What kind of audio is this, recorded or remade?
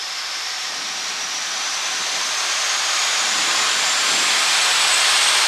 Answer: recorded